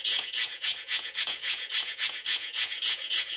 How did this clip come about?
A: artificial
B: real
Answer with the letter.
A